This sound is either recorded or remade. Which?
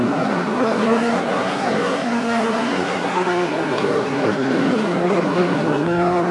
remade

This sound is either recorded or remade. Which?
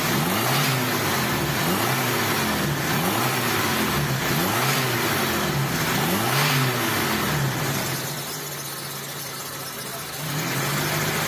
recorded